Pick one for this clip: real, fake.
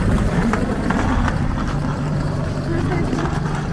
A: fake